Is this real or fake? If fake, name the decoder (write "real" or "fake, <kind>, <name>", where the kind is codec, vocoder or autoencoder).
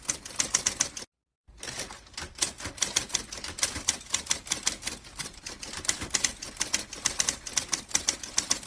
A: real